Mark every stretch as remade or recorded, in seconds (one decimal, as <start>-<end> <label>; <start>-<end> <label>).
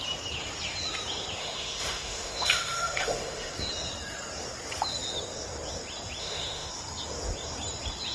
0.0-1.4 recorded; 1.4-3.5 remade; 3.5-6.2 recorded; 6.2-6.7 remade; 6.7-8.1 recorded